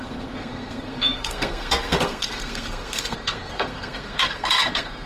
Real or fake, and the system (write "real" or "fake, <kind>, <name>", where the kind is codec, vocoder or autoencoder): fake, codec, SNAC